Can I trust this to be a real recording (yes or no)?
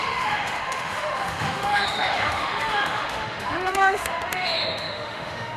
no